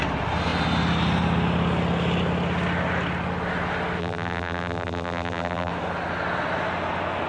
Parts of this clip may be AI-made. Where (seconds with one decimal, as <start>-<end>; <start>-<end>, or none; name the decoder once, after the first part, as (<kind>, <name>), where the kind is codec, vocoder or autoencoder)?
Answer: 4.0-5.7 (vocoder, BigVGAN v2)